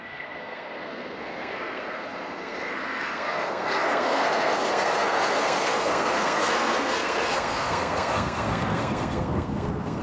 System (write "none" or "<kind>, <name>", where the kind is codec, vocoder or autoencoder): codec, SNAC